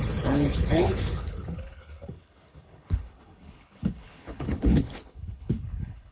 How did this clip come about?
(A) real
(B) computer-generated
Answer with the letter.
B